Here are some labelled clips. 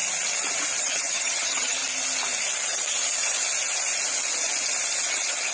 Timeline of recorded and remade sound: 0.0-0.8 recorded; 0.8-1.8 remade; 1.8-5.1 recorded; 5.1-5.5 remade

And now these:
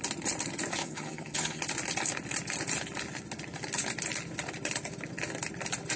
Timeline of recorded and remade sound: 0.0-0.8 recorded; 0.8-1.6 remade; 1.6-6.0 recorded

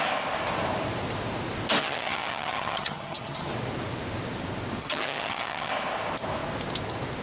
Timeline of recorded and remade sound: 0.0-1.8 recorded; 1.8-3.5 remade; 3.5-4.8 recorded; 4.8-5.7 remade; 5.7-7.2 recorded

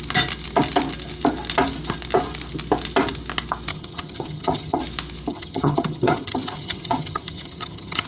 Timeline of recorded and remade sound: 0.0-3.7 recorded; 3.7-4.8 remade; 4.8-5.3 recorded; 5.3-8.1 remade

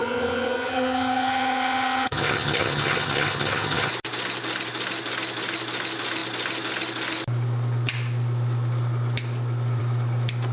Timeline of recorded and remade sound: 0.0-3.9 remade; 3.9-10.5 recorded